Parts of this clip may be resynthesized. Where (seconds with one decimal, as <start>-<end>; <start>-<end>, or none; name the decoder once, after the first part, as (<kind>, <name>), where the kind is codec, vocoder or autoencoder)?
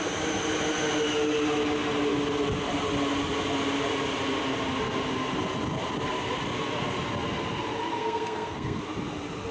8.0-8.8 (codec, SNAC)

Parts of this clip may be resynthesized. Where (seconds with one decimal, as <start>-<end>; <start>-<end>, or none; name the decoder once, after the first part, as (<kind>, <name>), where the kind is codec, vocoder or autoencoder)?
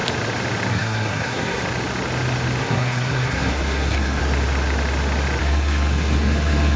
0.7-1.6 (codec, SNAC); 2.6-4.2; 5.4-6.8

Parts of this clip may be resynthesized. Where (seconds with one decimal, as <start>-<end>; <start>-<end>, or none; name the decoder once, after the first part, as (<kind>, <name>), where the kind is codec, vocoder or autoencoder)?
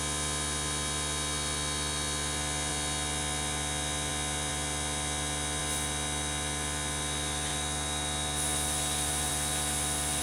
none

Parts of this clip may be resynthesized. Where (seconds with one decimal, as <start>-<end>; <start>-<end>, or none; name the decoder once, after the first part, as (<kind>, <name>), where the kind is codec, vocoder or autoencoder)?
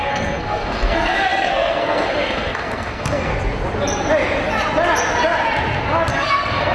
0.0-3.3 (codec, SNAC); 6.1-6.7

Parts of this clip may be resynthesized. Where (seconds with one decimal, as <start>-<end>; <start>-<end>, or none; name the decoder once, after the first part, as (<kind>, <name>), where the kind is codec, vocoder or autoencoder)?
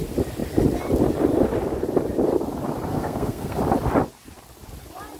2.9-3.6 (codec, SNAC)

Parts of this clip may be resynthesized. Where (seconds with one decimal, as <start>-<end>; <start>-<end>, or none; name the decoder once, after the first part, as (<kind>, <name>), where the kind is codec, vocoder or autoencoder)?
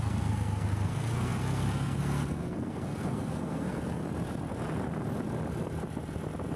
0.0-4.0 (codec, SNAC)